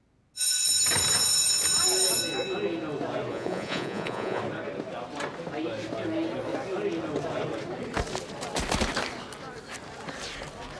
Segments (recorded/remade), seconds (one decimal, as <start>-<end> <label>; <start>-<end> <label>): 0.0-3.3 recorded; 3.3-4.4 remade; 4.4-10.8 recorded